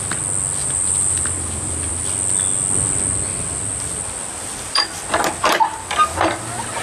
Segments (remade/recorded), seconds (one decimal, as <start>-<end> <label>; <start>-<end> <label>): 0.0-0.6 recorded; 0.6-2.0 remade; 2.0-6.8 recorded